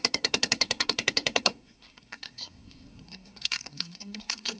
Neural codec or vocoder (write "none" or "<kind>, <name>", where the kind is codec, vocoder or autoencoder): codec, SNAC